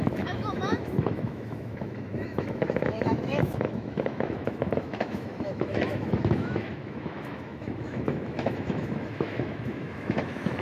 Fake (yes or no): yes